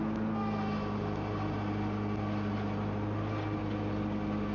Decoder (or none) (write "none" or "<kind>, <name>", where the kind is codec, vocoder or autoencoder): none